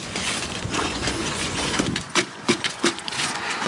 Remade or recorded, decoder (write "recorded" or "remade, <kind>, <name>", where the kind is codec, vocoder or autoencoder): remade, vocoder, Vocos